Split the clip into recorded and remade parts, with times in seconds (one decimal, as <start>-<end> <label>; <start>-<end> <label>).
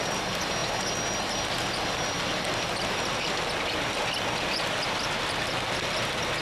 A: 0.0-6.4 recorded